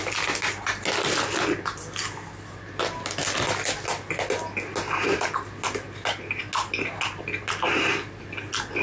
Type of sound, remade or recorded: recorded